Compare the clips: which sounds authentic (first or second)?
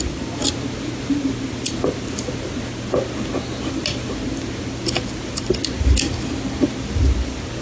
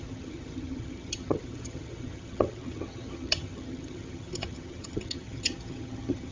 first